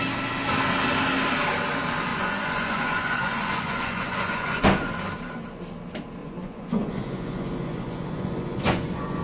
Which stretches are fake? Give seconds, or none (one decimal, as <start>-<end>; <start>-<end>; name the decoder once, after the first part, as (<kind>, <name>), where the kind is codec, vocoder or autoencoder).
2.1-4.6 (vocoder, Vocos); 6.2-9.2